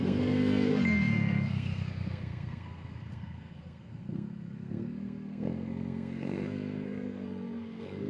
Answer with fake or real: fake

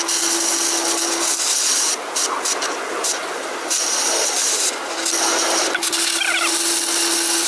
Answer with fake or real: real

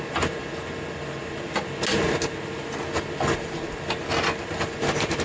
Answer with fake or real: real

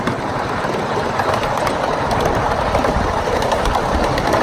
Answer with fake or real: real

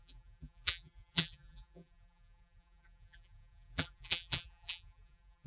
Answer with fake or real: fake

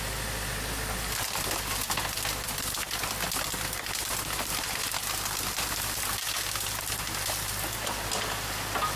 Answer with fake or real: real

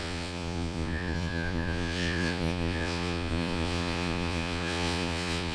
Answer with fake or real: fake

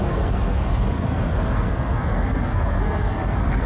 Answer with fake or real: fake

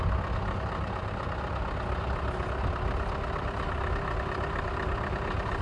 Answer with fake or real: real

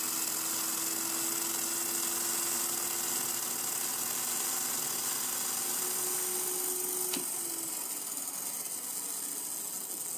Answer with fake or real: real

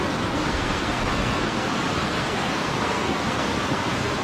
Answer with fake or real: fake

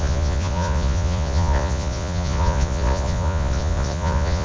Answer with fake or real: fake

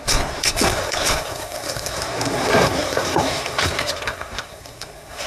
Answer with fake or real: fake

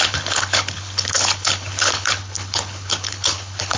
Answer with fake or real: fake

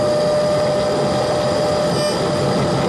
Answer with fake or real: real